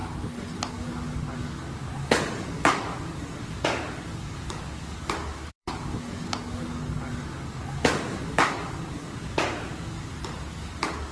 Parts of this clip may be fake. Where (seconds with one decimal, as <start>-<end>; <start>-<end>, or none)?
0.7-10.1; 10.6-11.1